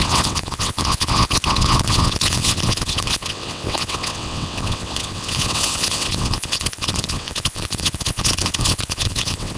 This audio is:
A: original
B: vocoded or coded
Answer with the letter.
B